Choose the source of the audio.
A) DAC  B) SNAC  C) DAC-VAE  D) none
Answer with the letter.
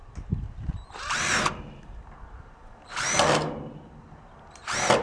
D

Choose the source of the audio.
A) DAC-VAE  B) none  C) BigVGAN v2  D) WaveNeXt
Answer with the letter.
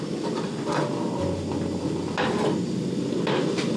B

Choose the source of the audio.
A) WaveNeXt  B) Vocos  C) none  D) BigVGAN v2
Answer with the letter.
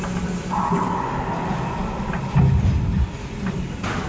C